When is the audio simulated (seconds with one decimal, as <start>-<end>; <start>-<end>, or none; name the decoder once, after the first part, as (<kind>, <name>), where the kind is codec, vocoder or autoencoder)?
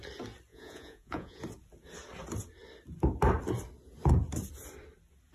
0.5-1.4 (vocoder, Vocos)